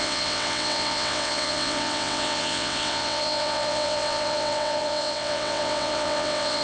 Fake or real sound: fake